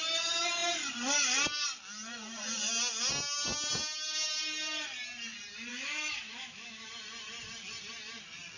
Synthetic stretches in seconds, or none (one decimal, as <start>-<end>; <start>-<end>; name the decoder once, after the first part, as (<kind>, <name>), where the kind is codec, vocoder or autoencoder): 5.7-6.9 (autoencoder, DAC-VAE)